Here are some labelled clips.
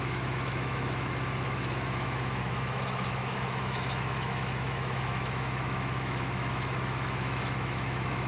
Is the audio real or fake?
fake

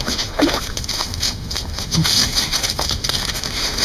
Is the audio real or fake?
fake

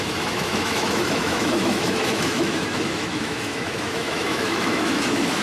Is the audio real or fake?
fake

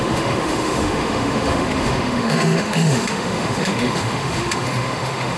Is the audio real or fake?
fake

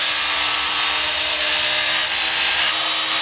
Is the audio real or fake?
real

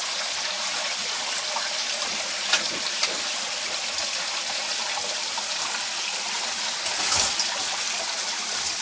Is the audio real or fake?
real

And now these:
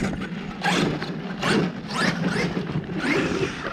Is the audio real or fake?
real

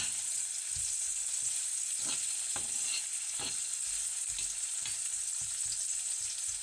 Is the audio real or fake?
real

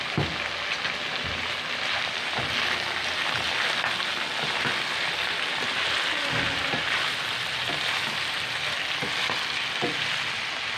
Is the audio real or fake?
real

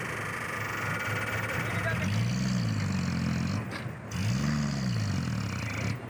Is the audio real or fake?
real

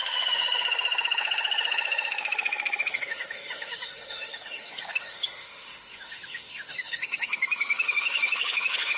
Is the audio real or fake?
fake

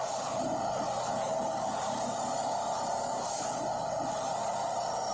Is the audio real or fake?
real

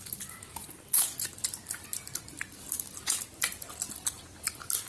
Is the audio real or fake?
real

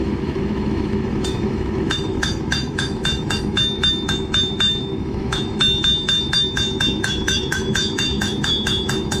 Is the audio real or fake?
fake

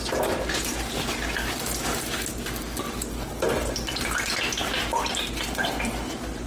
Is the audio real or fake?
real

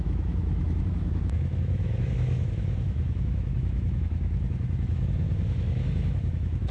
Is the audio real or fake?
fake